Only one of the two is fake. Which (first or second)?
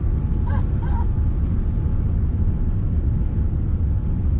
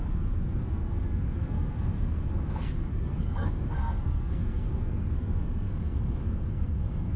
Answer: second